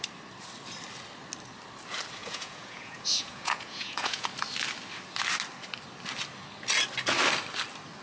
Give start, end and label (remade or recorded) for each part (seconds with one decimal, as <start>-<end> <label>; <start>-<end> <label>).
0.0-2.2 recorded; 2.2-4.3 remade; 4.3-8.0 recorded